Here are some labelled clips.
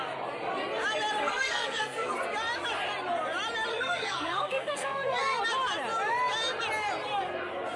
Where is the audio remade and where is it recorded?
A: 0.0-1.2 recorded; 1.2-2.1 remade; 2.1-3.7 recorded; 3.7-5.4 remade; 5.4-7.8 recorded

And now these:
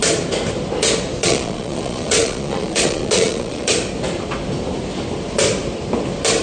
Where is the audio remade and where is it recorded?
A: 0.0-1.2 recorded; 1.2-3.7 remade; 3.7-6.4 recorded

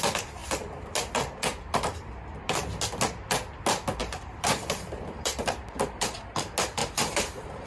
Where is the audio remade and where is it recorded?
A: 0.0-4.0 recorded; 4.0-6.2 remade; 6.2-6.8 recorded; 6.8-7.7 remade

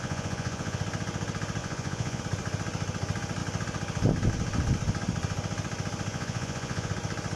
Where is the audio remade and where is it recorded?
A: 0.0-0.8 remade; 0.8-1.6 recorded; 1.6-2.2 remade; 2.2-6.1 recorded; 6.1-6.9 remade; 6.9-7.4 recorded

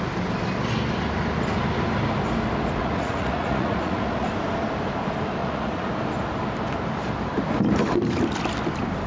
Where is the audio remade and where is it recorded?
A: 0.0-2.8 recorded; 2.8-4.3 remade; 4.3-5.4 recorded; 5.4-5.9 remade; 5.9-9.1 recorded